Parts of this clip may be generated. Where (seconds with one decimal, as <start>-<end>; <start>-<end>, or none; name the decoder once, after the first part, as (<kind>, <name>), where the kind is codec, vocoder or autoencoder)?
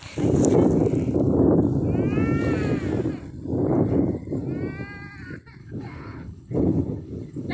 5.6-7.5 (codec, HILCodec)